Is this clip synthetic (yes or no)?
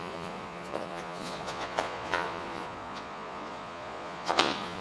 yes